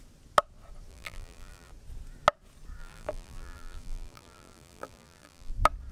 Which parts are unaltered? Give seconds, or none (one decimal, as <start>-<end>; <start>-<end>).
0.0-0.9; 1.7-2.8; 5.5-5.9

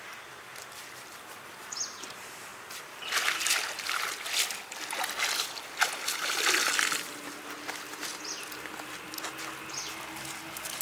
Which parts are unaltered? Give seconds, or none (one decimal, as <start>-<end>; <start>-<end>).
0.0-10.8

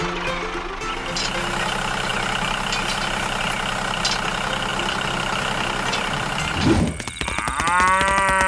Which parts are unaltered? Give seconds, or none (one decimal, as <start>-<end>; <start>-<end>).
0.0-2.1; 3.4-4.7; 7.4-8.5

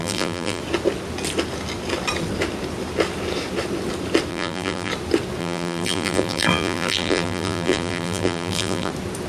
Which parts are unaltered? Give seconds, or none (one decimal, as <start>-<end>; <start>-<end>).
0.6-4.3; 4.9-5.4; 8.9-9.3

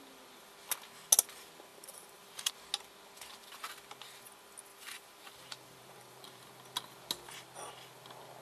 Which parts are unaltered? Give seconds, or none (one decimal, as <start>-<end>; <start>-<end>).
0.0-1.7; 2.5-4.7; 6.4-8.4